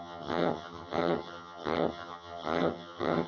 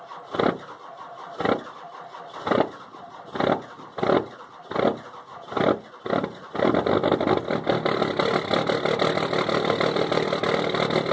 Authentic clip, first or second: second